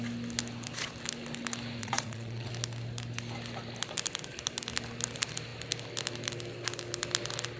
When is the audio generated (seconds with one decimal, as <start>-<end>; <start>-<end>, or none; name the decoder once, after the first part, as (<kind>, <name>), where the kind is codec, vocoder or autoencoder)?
1.8-2.5 (vocoder, Vocos)